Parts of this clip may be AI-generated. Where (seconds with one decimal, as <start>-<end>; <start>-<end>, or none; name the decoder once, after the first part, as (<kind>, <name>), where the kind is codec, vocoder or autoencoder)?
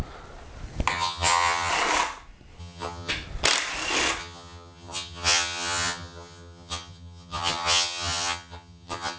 0.9-1.7 (vocoder, HiFi-GAN); 2.6-3.1; 4.2-9.2